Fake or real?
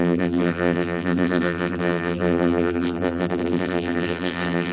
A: fake